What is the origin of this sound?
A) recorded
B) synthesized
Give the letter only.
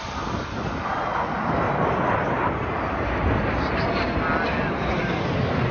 A